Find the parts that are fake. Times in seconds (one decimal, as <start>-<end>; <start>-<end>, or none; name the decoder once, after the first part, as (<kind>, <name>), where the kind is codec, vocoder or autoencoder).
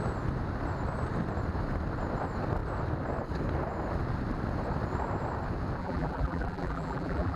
5.8-7.4 (vocoder, BigVGAN v2)